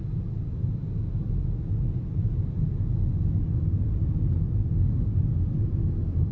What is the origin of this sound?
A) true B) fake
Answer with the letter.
A